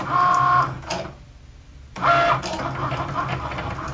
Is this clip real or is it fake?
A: real